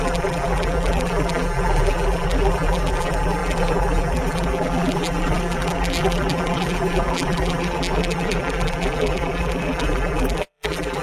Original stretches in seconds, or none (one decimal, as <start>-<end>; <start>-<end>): none